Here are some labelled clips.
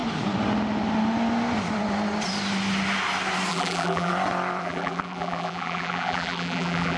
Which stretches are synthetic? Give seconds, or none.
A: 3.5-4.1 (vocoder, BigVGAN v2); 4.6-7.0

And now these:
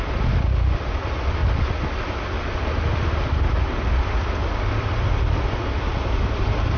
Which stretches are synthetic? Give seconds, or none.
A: none

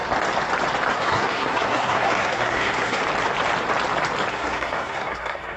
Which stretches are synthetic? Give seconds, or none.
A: 0.9-3.0 (codec, SNAC); 4.3-5.6

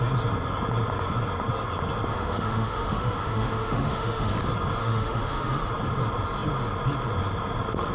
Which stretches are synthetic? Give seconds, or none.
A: 2.1-4.3 (autoencoder, DAC-VAE); 4.8-5.7